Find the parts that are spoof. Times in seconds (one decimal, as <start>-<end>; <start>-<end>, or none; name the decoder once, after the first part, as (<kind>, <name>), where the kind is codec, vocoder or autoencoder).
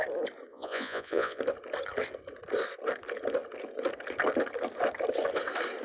0.5-1.4 (vocoder, Vocos)